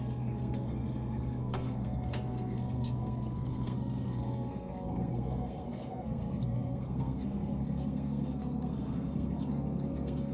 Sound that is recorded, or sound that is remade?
remade